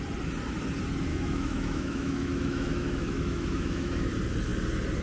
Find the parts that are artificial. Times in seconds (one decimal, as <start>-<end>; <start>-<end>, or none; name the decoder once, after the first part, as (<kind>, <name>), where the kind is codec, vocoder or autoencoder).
1.1-4.1 (autoencoder, DAC-VAE)